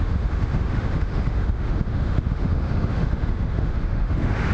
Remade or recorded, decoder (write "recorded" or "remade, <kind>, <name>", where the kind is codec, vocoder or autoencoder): remade, autoencoder, DAC-VAE